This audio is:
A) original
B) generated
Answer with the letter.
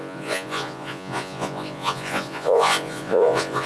B